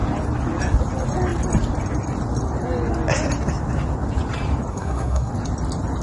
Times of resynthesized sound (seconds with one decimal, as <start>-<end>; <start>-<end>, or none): 4.7-5.3